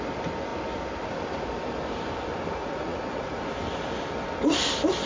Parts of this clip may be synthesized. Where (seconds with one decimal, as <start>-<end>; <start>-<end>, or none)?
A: 2.6-3.4